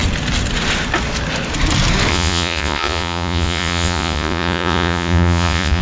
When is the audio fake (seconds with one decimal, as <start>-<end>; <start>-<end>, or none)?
2.1-5.8